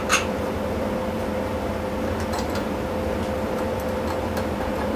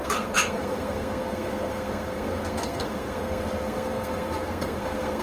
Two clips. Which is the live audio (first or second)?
first